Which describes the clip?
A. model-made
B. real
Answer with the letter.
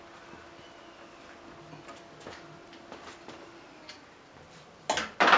B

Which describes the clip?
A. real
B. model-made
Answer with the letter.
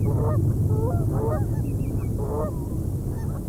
A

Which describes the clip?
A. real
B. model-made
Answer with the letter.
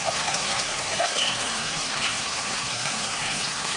B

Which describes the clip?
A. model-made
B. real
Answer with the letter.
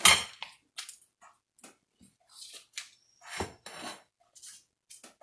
B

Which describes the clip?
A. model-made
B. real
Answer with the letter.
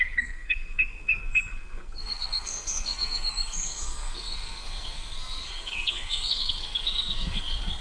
A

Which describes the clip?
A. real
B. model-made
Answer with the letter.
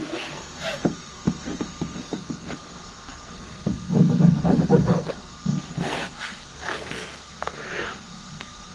B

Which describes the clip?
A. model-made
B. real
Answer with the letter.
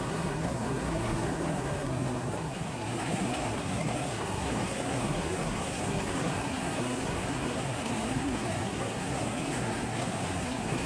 A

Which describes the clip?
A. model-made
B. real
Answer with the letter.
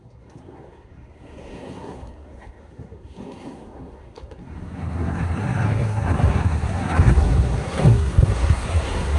A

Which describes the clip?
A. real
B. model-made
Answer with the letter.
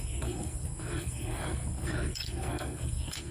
B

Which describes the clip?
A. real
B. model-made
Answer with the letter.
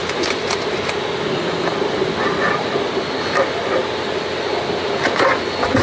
A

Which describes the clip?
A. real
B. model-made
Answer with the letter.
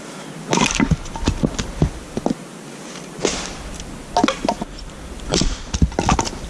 A